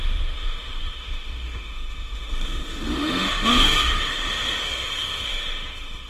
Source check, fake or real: fake